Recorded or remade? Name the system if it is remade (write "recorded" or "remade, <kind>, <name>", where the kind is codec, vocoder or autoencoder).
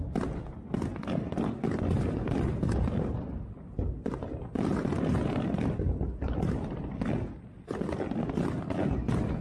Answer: recorded